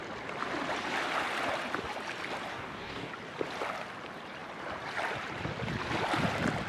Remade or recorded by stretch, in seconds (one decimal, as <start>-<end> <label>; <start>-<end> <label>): 0.0-2.5 recorded; 2.5-3.1 remade; 3.1-6.7 recorded

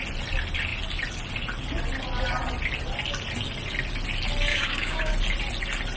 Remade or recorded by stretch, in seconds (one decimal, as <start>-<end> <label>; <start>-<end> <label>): 0.0-4.5 recorded; 4.5-5.1 remade; 5.1-6.0 recorded

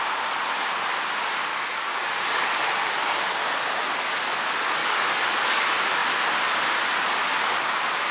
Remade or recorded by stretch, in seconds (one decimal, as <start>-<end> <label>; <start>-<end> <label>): 0.0-1.5 recorded; 1.5-2.0 remade; 2.0-4.8 recorded; 4.8-5.6 remade; 5.6-8.1 recorded

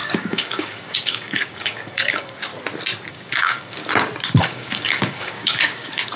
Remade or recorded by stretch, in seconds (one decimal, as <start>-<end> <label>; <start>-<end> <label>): 0.0-2.5 remade; 2.5-3.1 recorded; 3.1-3.8 remade; 3.8-4.4 recorded; 4.4-6.2 remade

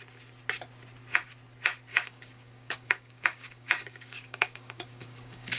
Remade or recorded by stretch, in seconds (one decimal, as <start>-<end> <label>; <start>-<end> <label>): 0.0-1.9 recorded; 1.9-5.6 remade

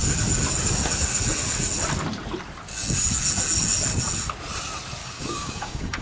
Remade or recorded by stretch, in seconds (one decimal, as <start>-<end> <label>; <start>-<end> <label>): 0.0-5.0 recorded; 5.0-6.0 remade

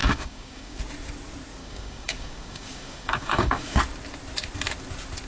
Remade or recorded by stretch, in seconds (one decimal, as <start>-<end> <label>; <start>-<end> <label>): 0.0-0.8 remade; 0.8-1.6 recorded; 1.6-3.8 remade; 3.8-5.3 recorded